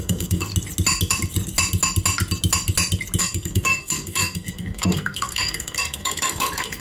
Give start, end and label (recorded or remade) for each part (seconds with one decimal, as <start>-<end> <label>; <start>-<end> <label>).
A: 0.0-0.5 remade; 0.5-3.2 recorded; 3.2-6.8 remade